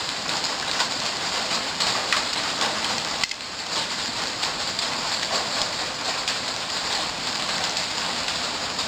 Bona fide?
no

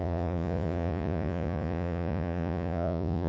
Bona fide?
no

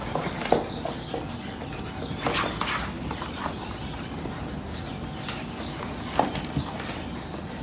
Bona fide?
yes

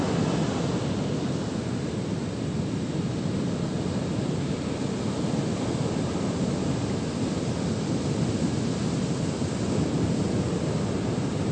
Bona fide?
yes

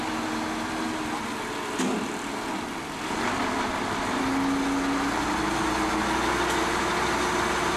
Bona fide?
yes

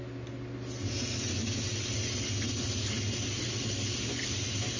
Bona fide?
yes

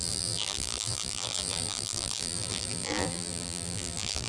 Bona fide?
no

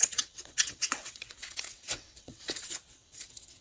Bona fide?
no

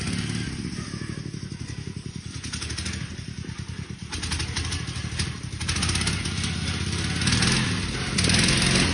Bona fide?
yes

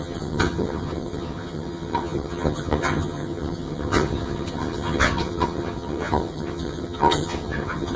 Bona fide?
no